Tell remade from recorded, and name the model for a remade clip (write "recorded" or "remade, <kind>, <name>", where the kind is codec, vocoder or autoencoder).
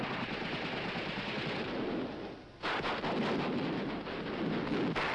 recorded